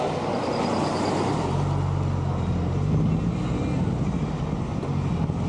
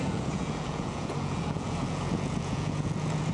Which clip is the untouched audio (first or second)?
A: first